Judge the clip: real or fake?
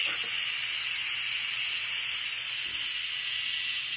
real